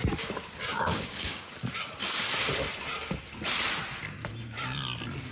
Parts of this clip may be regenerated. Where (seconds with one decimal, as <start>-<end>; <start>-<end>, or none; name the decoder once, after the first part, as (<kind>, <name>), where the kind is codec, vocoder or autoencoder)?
0.7-1.5 (codec, DAC)